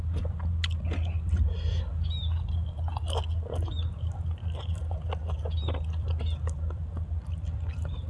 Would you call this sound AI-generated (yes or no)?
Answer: no